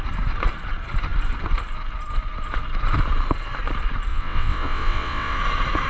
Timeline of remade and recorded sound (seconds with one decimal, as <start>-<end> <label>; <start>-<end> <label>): 0.0-4.1 recorded; 4.1-5.4 remade; 5.4-5.9 recorded